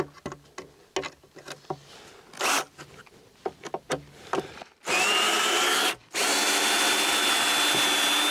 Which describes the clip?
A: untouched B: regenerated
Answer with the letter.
A